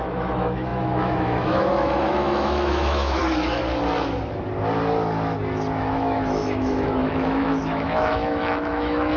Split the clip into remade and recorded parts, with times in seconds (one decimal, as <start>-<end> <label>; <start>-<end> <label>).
0.0-3.2 remade; 3.2-5.8 recorded; 5.8-9.2 remade